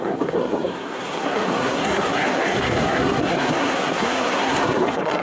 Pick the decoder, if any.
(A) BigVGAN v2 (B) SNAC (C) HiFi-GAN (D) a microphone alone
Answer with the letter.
B